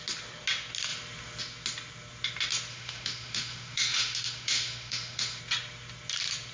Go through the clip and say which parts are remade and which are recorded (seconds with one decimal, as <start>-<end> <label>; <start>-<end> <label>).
0.0-2.7 recorded; 2.7-5.4 remade; 5.4-6.5 recorded